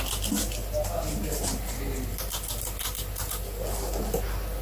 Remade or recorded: recorded